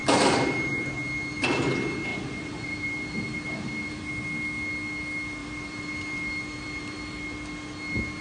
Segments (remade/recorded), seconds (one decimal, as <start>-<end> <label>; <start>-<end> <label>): 0.0-0.7 remade; 0.7-2.1 recorded; 2.1-4.1 remade; 4.1-5.4 recorded; 5.4-7.2 remade; 7.2-8.2 recorded